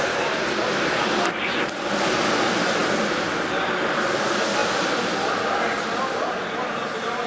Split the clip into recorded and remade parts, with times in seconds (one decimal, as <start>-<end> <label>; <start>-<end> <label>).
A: 0.0-7.3 recorded